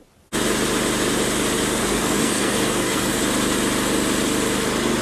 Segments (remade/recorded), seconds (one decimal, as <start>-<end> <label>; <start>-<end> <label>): 0.0-1.8 recorded; 1.8-3.2 remade; 3.2-5.0 recorded